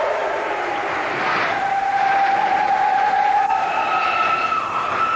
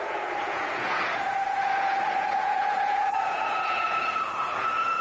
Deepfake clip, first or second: second